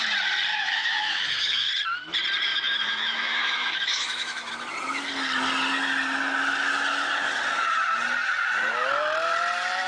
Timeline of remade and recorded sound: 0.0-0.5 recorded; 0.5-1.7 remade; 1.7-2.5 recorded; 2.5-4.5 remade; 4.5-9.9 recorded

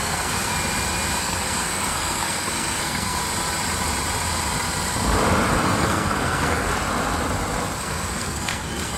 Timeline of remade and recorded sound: 0.0-0.5 remade; 0.5-1.2 recorded; 1.2-3.2 remade; 3.2-5.5 recorded; 5.5-6.7 remade; 6.7-7.8 recorded; 7.8-9.0 remade

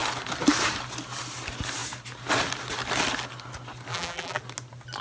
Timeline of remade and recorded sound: 0.0-3.9 recorded; 3.9-4.4 remade; 4.4-5.0 recorded